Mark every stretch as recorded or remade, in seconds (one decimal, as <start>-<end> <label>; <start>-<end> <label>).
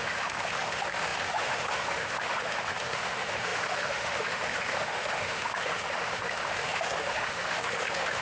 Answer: 0.0-8.2 remade